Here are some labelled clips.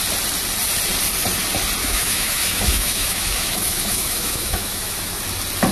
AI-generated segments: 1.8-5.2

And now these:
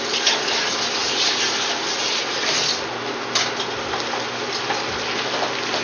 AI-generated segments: none